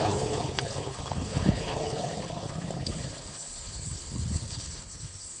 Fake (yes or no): yes